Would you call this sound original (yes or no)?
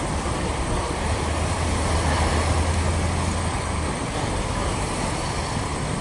yes